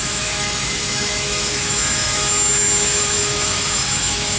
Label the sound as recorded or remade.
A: remade